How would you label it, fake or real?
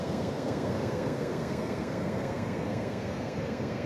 fake